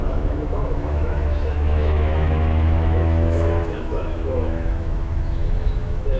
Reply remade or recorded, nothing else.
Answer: remade